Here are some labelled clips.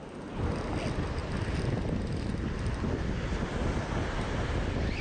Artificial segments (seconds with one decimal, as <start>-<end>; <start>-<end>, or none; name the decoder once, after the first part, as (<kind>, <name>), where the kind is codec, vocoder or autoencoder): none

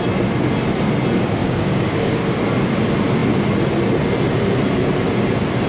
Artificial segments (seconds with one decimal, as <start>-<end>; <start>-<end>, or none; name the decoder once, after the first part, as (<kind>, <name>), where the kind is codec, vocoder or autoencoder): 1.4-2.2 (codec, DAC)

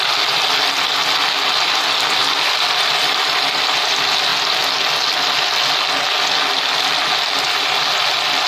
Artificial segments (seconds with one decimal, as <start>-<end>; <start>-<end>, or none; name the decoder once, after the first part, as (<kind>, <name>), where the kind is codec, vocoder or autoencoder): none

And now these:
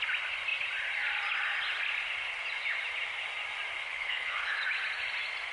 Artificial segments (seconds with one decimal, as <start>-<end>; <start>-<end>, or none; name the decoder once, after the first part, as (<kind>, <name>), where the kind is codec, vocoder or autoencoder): 3.8-4.5 (codec, HILCodec)